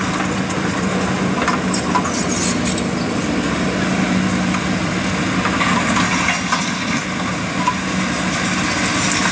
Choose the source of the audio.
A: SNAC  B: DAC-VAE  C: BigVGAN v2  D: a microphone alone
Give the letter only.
D